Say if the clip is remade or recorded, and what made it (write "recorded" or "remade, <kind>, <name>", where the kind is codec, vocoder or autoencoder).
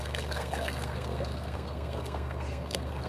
remade, codec, SNAC